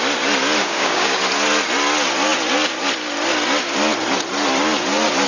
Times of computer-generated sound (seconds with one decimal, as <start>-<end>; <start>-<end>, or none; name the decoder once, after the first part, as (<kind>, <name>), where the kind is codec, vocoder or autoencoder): 0.6-1.2 (codec, DAC)